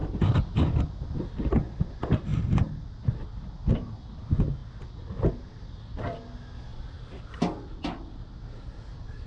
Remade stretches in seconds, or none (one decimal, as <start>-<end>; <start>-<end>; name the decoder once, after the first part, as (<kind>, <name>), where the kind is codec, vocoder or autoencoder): none